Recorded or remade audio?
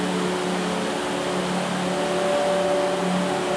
recorded